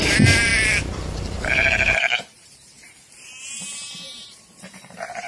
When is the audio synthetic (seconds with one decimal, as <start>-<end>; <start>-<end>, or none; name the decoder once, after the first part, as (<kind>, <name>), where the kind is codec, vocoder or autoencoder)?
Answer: 0.0-5.3 (vocoder, BigVGAN v2)